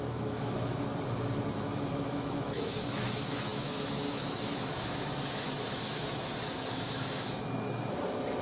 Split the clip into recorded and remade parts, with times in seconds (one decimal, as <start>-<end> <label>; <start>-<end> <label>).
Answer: 0.0-0.9 remade; 0.9-1.5 recorded; 1.5-8.4 remade